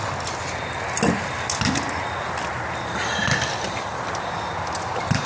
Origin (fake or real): real